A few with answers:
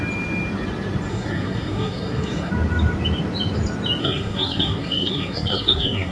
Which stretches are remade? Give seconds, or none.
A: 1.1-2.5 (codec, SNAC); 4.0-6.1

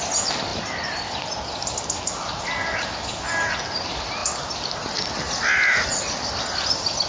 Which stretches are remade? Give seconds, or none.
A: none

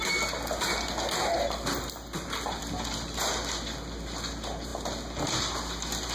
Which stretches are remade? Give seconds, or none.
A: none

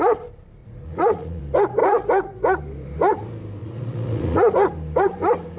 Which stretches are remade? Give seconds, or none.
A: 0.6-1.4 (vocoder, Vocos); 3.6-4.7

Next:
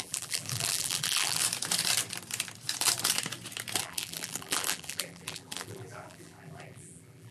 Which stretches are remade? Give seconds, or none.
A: 0.0-1.4 (vocoder, BigVGAN v2); 3.8-7.3